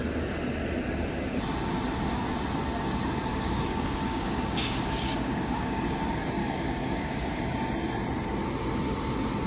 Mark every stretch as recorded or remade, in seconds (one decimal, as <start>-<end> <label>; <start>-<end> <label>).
0.0-3.3 recorded; 3.3-5.8 remade; 5.8-6.4 recorded; 6.4-7.4 remade; 7.4-9.5 recorded